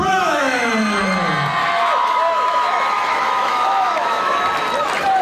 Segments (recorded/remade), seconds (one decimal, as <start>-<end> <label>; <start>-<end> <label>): 0.0-0.7 remade; 0.7-1.6 recorded; 1.6-4.4 remade; 4.4-5.2 recorded